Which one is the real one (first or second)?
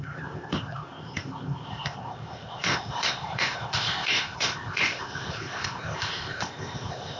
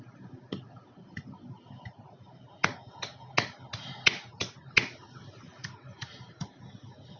second